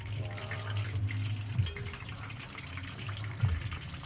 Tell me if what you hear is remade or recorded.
recorded